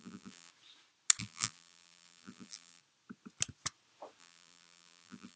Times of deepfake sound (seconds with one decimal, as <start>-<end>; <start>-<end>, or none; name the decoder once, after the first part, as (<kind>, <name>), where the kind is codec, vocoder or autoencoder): 0.0-0.5 (vocoder, BigVGAN v2); 1.2-2.8; 4.2-5.4

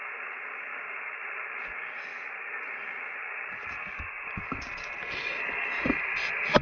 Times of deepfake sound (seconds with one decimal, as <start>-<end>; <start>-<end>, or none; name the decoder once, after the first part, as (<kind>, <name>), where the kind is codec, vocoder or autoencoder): 0.7-1.6 (vocoder, BigVGAN v2)

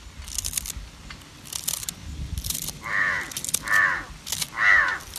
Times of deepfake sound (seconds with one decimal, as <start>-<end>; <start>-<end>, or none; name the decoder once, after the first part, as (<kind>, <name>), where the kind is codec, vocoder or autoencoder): none

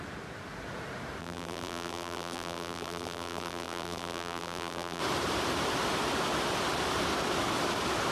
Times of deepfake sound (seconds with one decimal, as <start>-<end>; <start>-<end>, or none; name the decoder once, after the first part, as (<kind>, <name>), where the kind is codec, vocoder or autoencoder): 1.2-5.0 (vocoder, BigVGAN v2)